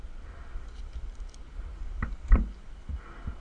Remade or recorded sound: recorded